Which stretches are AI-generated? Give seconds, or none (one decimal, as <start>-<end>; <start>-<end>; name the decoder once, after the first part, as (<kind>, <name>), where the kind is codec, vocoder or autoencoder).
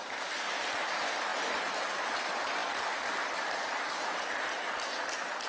1.3-1.8 (vocoder, BigVGAN v2); 2.6-3.5